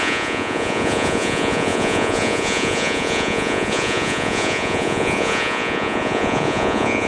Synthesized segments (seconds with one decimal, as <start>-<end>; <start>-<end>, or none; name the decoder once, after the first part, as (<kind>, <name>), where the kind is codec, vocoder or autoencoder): 0.0-7.1 (vocoder, Vocos)